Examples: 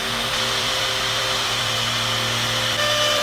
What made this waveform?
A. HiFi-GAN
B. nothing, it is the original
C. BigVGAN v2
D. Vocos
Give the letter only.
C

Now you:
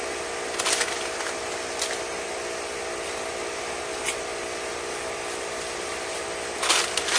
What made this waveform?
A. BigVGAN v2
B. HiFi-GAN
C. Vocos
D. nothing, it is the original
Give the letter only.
D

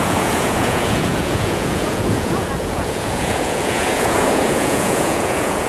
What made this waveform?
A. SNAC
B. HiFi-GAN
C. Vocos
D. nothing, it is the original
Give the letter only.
C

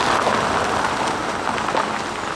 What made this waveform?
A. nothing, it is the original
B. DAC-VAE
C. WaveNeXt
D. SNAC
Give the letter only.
A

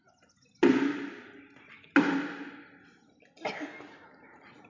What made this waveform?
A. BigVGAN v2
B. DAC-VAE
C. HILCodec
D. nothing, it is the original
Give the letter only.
D